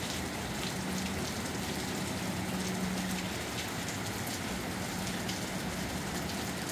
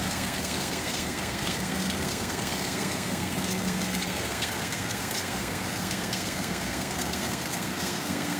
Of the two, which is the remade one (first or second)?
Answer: second